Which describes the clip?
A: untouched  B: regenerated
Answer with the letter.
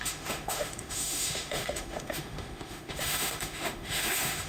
B